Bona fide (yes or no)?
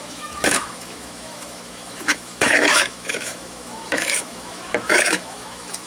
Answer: no